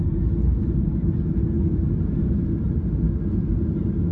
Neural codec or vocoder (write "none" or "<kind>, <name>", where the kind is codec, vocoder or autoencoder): none